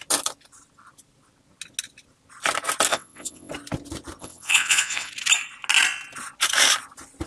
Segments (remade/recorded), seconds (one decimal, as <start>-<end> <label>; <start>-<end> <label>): 0.0-2.9 recorded; 2.9-3.5 remade; 3.5-4.2 recorded; 4.2-5.1 remade; 5.1-7.3 recorded